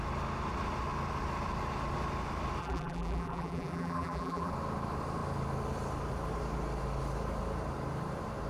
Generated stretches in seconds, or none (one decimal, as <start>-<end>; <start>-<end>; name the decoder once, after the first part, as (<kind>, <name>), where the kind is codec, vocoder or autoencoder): 2.6-4.5 (vocoder, BigVGAN v2)